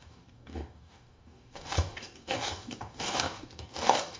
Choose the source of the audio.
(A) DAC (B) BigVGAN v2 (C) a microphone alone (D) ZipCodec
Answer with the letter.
A